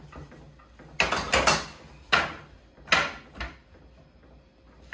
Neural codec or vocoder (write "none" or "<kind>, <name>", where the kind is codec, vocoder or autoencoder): none